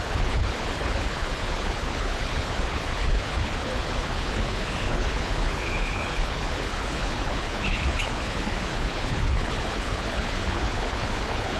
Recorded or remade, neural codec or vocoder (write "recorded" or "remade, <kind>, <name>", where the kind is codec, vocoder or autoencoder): remade, codec, HILCodec